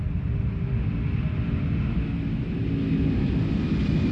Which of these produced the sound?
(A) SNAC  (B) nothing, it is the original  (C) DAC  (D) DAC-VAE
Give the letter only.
B